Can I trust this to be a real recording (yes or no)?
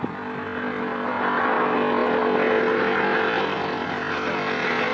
yes